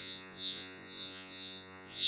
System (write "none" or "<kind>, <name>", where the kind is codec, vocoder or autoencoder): vocoder, Vocos